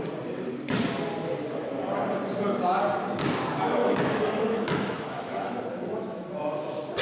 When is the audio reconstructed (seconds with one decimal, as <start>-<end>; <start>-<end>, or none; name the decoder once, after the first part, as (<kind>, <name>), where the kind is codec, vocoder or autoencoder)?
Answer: 3.8-5.6 (autoencoder, DAC-VAE)

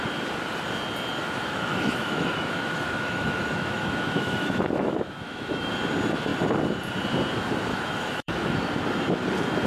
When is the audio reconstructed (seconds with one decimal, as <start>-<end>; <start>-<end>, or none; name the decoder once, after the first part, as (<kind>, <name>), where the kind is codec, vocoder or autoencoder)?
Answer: 1.2-5.7 (autoencoder, DAC-VAE); 7.7-8.7